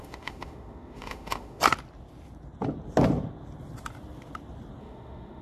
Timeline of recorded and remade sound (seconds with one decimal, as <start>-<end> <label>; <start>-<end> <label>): 0.0-1.6 remade; 1.6-4.8 recorded; 4.8-5.4 remade